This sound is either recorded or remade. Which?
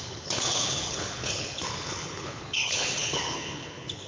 remade